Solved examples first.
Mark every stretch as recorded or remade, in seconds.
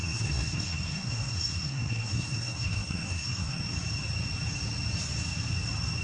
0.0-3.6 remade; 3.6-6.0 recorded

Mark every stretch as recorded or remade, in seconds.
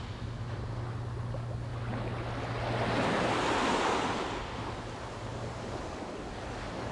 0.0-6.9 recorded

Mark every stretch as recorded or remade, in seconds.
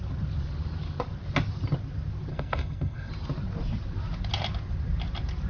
0.0-2.3 recorded; 2.3-3.1 remade; 3.1-5.5 recorded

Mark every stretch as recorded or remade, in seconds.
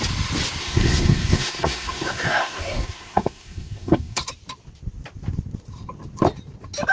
0.0-0.6 recorded; 0.6-4.2 remade; 4.2-6.9 recorded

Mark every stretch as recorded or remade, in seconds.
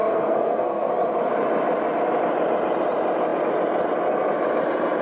0.0-0.9 remade; 0.9-5.0 recorded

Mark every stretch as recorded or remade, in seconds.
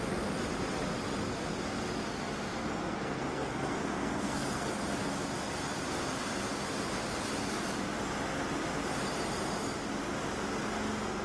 0.0-2.5 recorded; 2.5-4.7 remade; 4.7-11.2 recorded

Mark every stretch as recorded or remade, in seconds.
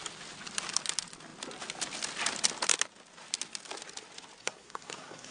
0.0-4.4 recorded; 4.4-5.3 remade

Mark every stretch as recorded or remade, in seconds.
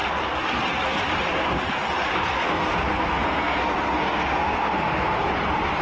0.0-2.1 recorded; 2.1-5.2 remade; 5.2-5.8 recorded